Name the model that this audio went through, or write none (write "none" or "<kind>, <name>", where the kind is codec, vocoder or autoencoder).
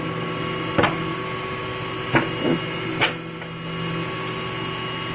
none